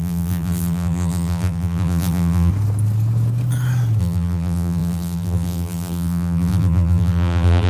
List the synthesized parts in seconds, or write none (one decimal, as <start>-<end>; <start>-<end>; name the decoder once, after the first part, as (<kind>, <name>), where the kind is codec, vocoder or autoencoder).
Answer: 0.0-2.5 (vocoder, BigVGAN v2); 4.0-7.7